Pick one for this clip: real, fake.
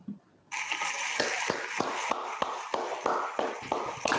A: real